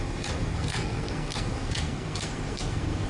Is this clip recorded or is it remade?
remade